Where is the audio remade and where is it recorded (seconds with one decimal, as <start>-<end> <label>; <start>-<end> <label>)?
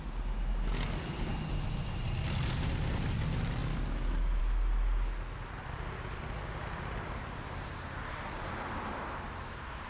0.0-9.9 recorded